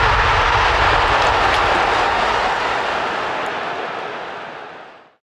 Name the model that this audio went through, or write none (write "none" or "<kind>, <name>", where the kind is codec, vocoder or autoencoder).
none